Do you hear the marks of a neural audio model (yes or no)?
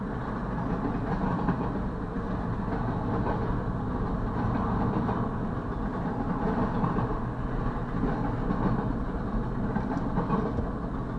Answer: no